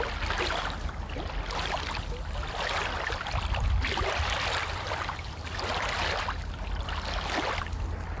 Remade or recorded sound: recorded